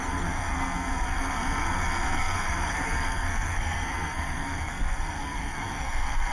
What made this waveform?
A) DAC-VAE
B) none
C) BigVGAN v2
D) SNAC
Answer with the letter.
D